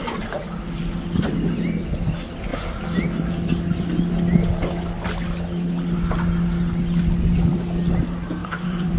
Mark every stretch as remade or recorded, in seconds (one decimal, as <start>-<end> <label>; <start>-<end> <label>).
0.0-8.4 recorded; 8.4-9.0 remade